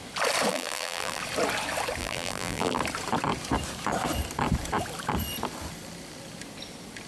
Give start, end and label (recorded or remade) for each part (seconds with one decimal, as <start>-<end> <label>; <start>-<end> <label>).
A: 0.0-0.5 recorded; 0.5-1.2 remade; 1.2-2.0 recorded; 2.0-2.8 remade; 2.8-7.1 recorded